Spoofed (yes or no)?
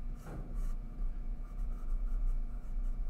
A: yes